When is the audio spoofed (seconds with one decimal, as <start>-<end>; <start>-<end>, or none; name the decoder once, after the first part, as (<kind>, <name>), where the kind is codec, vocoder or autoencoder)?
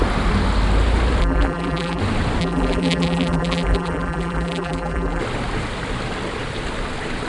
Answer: 1.2-2.0 (vocoder, BigVGAN v2); 2.4-5.2